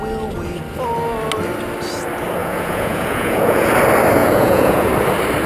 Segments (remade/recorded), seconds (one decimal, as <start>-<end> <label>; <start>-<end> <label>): 0.0-2.4 recorded; 2.4-3.7 remade; 3.7-4.2 recorded; 4.2-4.9 remade; 4.9-5.5 recorded